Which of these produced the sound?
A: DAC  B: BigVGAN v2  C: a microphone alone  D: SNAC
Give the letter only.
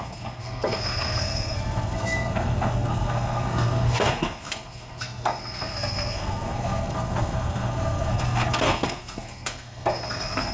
D